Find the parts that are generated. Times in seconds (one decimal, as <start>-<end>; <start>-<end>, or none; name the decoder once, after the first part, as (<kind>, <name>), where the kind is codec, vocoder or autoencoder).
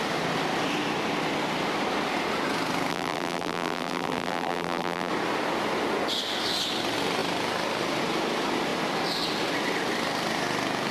2.9-5.1 (vocoder, BigVGAN v2)